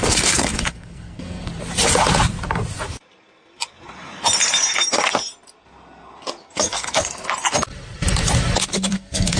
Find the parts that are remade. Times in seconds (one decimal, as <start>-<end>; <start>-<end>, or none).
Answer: 0.0-1.5; 6.4-7.2; 8.7-9.4